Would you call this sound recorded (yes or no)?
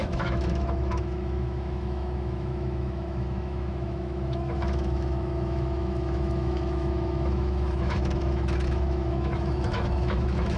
no